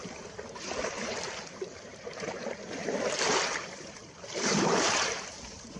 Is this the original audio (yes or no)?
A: no